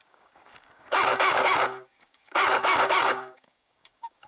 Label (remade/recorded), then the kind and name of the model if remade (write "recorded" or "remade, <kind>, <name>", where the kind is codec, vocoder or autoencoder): remade, codec, DAC